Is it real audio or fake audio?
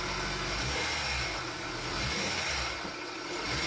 real